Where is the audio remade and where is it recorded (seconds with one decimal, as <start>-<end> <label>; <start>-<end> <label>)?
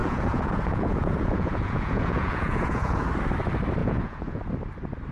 0.0-3.1 remade; 3.1-3.8 recorded; 3.8-4.4 remade; 4.4-5.1 recorded